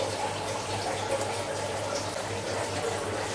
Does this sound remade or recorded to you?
recorded